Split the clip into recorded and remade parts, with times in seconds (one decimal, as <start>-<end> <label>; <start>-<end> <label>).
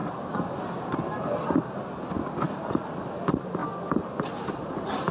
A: 0.0-3.1 recorded; 3.1-3.6 remade; 3.6-4.4 recorded; 4.4-5.1 remade